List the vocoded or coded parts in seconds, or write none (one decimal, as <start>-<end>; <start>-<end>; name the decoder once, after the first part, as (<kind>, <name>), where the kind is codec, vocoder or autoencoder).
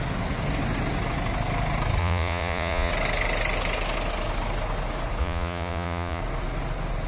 2.0-2.9 (vocoder, Vocos); 5.2-6.2